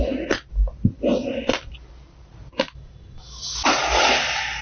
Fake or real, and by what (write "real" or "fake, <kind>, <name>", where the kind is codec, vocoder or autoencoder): real